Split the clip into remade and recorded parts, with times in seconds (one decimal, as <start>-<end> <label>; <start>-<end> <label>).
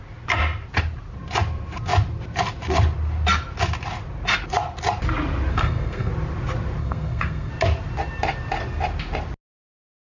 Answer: 0.0-5.5 recorded; 5.5-6.1 remade; 6.1-6.8 recorded; 6.8-7.5 remade; 7.5-10.0 recorded